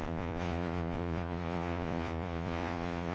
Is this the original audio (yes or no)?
no